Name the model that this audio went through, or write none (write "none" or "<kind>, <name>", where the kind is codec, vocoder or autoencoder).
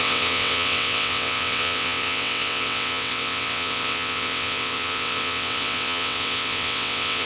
vocoder, WaveNeXt